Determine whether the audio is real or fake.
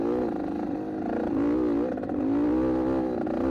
real